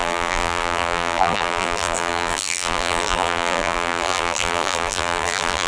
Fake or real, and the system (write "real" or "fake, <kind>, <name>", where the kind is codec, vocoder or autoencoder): fake, vocoder, BigVGAN v2